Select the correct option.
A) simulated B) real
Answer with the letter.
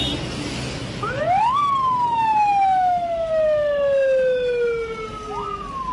B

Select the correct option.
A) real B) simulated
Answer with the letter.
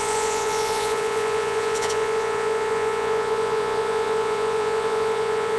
B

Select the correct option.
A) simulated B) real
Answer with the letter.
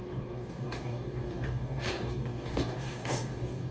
A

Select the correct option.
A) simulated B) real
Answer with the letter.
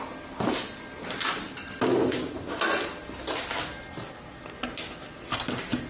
B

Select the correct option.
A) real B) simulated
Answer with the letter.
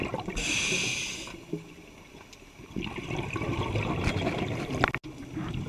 A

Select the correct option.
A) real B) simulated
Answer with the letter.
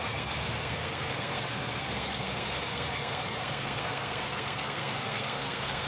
B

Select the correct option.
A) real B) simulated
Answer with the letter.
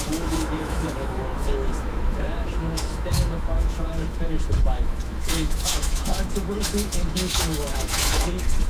B